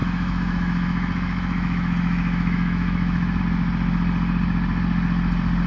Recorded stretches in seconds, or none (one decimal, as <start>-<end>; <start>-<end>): 3.4-5.7